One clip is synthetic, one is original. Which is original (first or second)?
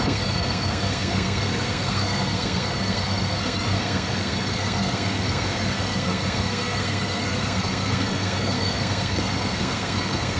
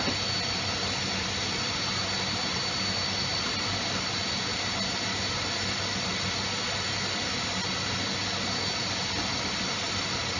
second